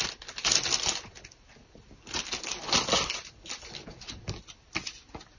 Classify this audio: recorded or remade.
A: recorded